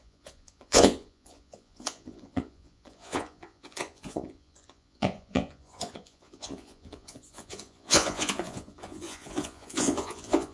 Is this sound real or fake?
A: fake